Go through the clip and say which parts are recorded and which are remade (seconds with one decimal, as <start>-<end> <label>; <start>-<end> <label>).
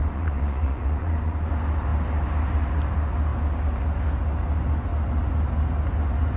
0.0-1.5 remade; 1.5-6.4 recorded